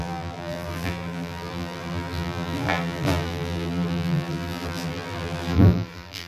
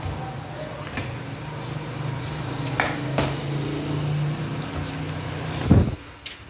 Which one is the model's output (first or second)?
first